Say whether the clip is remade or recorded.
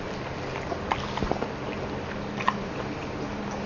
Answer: recorded